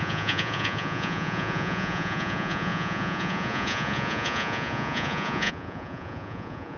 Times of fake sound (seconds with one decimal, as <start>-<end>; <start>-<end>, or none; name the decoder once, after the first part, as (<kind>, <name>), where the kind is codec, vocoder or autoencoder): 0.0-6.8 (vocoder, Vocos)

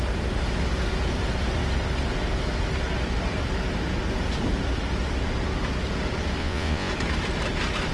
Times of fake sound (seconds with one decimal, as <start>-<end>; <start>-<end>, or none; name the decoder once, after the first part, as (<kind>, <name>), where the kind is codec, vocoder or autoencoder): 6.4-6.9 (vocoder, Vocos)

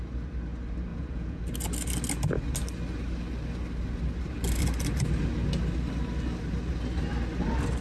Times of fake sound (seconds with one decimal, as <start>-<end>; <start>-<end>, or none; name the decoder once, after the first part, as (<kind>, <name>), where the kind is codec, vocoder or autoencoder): 0.9-1.4 (vocoder, Vocos)